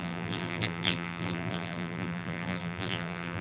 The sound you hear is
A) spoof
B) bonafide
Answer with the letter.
A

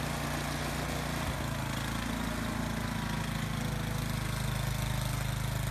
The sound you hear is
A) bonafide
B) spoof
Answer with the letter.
A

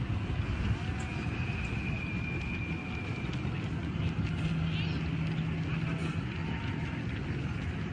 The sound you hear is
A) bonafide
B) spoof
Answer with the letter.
A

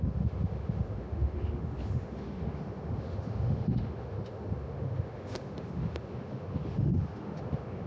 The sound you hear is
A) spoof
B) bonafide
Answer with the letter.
A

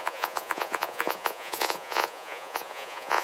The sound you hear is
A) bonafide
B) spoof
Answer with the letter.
B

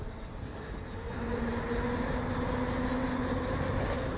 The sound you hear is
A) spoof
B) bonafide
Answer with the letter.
B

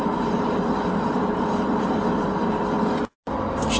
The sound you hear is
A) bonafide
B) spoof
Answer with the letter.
A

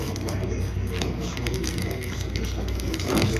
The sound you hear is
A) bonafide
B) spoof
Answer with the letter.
B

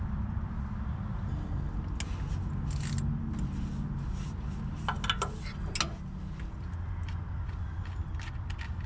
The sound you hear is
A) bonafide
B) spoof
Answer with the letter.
A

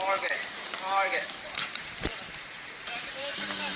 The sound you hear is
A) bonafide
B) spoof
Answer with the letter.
B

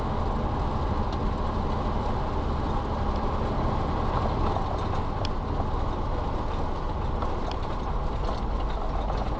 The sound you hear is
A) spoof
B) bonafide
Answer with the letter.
B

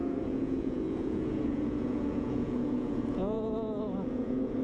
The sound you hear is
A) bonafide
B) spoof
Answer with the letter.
B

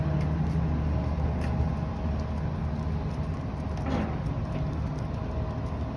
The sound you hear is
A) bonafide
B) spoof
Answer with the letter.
A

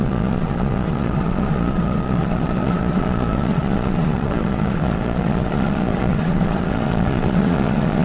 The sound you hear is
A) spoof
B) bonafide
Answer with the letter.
A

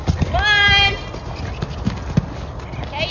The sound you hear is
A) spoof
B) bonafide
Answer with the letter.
B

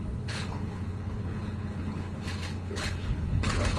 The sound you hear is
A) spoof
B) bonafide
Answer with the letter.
A